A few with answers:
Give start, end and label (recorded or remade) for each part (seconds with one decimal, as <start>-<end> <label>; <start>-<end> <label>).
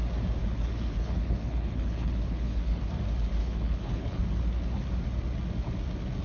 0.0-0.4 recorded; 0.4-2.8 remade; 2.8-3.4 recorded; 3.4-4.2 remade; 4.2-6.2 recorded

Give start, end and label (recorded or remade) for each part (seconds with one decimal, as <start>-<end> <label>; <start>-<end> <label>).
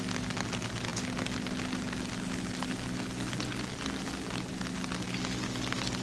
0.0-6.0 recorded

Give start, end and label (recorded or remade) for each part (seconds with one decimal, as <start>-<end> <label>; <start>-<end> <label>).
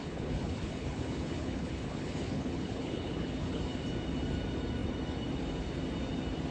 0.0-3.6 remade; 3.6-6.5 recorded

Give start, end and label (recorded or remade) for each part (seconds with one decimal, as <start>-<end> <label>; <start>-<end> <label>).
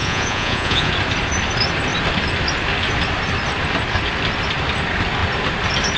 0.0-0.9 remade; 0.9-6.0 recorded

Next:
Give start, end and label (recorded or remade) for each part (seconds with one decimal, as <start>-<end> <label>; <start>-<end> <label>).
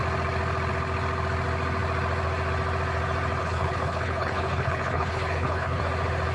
0.0-3.4 recorded; 3.4-5.8 remade; 5.8-6.3 recorded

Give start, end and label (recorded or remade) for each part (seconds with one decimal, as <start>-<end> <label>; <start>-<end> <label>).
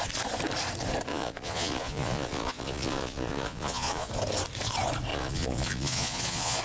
0.0-1.1 recorded; 1.1-4.1 remade; 4.1-5.1 recorded; 5.1-6.6 remade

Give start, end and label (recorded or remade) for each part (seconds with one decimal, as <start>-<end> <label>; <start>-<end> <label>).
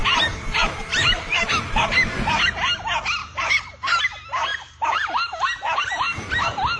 0.0-1.9 remade; 1.9-3.2 recorded; 3.2-4.0 remade; 4.0-6.8 recorded